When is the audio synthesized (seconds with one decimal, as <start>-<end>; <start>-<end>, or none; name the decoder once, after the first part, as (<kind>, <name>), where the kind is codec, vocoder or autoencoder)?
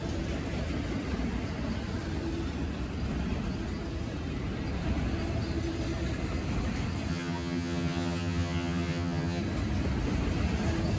7.1-9.4 (vocoder, HiFi-GAN)